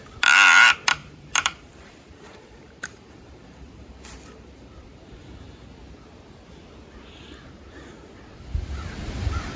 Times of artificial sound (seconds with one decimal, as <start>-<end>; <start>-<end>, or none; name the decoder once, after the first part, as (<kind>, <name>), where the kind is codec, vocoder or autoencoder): 1.0-5.4 (vocoder, BigVGAN v2)